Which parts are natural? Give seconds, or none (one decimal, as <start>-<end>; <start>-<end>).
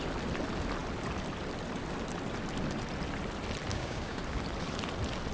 0.0-3.7; 4.2-5.3